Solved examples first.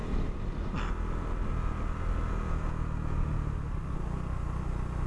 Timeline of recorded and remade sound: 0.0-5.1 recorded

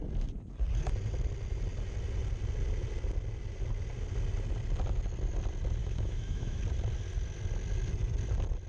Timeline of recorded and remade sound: 0.0-5.8 recorded; 5.8-6.6 remade; 6.6-8.7 recorded

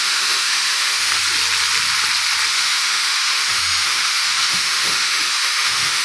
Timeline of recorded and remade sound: 0.0-1.2 remade; 1.2-2.5 recorded; 2.5-6.0 remade

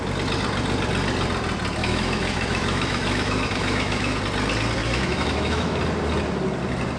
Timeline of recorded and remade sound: 0.0-1.8 recorded; 1.8-4.2 remade; 4.2-4.8 recorded; 4.8-5.8 remade; 5.8-7.0 recorded

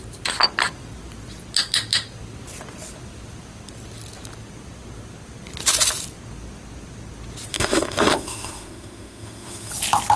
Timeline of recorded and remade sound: 0.0-7.5 recorded; 7.5-9.7 remade; 9.7-10.2 recorded

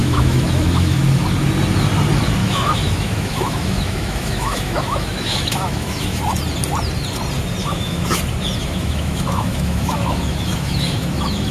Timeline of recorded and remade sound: 0.0-1.0 remade; 1.0-2.4 recorded; 2.4-6.2 remade; 6.2-7.6 recorded; 7.6-8.2 remade; 8.2-8.6 recorded; 8.6-11.5 remade